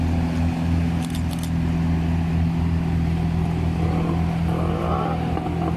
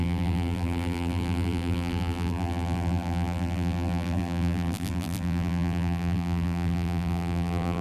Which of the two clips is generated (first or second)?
second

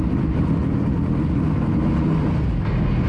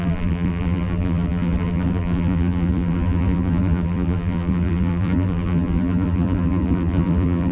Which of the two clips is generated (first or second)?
second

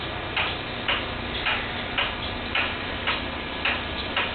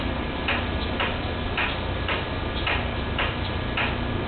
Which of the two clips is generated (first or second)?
first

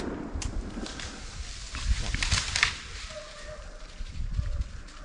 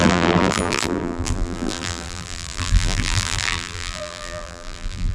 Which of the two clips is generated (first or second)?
second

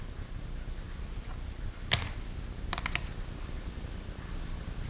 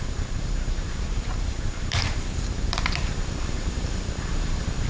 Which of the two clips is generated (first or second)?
second